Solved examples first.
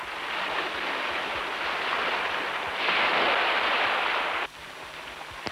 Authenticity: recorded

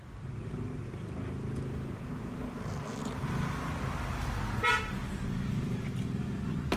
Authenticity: recorded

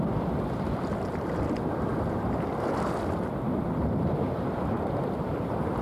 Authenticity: remade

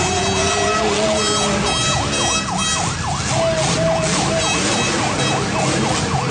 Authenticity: recorded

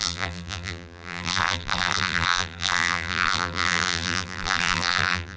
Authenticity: remade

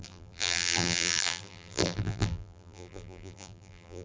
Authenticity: remade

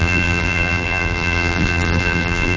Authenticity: remade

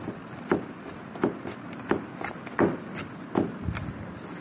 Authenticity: recorded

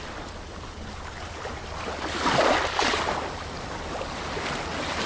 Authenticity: recorded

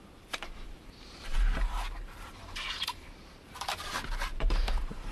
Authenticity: remade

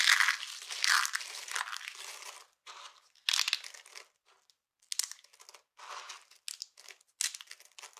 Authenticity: recorded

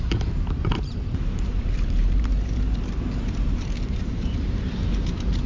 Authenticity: remade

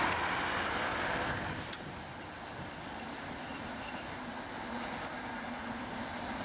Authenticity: recorded